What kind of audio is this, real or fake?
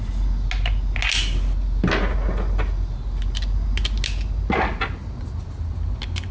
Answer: real